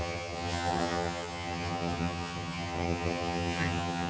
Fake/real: fake